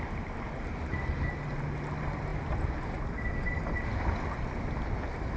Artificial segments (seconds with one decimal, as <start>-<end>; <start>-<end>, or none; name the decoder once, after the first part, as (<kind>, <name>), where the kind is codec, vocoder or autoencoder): none